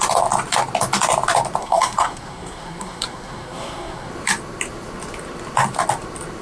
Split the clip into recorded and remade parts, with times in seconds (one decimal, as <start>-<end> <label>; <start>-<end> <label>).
0.0-1.6 recorded; 1.6-4.1 remade; 4.1-6.4 recorded